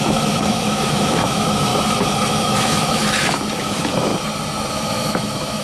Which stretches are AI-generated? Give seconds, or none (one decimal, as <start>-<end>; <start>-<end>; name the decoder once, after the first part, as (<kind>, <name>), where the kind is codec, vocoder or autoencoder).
0.0-1.7 (autoencoder, DAC-VAE); 2.3-3.0; 3.6-4.1; 4.7-5.6